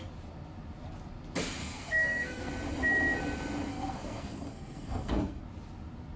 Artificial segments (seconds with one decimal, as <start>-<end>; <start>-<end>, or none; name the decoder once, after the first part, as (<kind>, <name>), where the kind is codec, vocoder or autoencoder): 1.6-2.5 (codec, SNAC); 3.7-5.4